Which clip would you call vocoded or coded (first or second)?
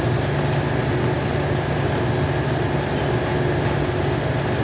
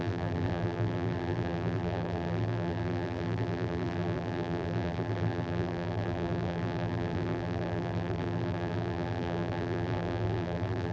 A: second